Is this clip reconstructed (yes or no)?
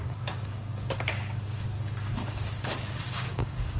yes